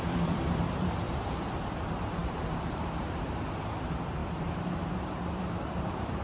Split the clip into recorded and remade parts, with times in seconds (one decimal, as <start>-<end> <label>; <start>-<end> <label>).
0.0-6.2 remade